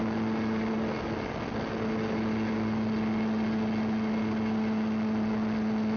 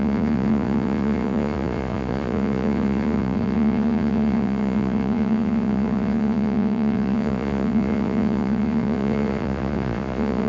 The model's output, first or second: second